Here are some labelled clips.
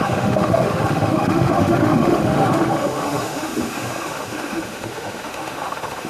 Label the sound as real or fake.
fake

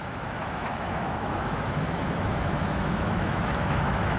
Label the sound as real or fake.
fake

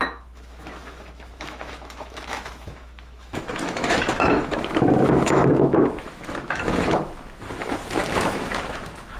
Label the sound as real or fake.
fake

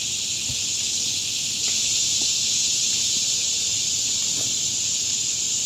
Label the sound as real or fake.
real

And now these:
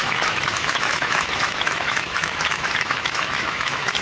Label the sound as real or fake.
fake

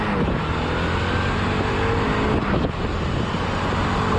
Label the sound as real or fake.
real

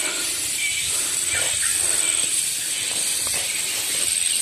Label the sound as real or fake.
real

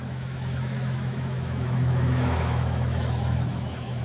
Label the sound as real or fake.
fake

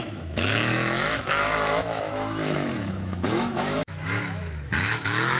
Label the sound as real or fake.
fake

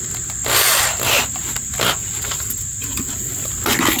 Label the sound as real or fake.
real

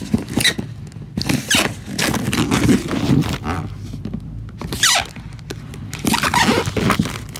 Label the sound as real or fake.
real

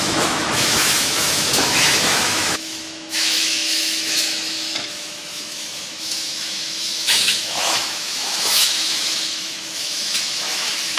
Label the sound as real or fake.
fake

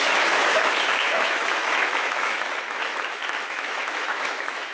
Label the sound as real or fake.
fake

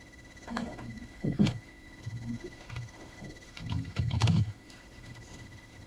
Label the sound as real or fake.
fake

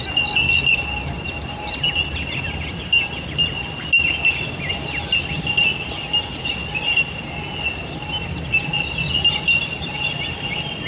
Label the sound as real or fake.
real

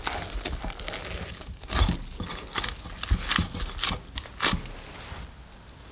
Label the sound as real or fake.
real